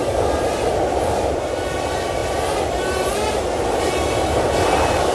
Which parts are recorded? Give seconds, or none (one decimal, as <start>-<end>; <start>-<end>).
0.0-0.6; 2.2-3.7